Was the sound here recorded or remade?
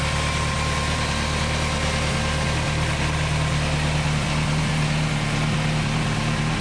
recorded